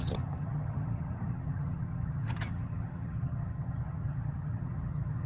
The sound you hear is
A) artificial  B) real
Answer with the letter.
A